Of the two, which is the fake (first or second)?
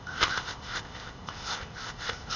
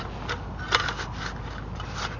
first